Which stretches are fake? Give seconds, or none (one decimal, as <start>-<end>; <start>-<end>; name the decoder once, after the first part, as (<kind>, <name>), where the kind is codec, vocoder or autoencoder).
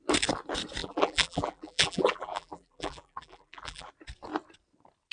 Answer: 0.8-3.9 (vocoder, BigVGAN v2)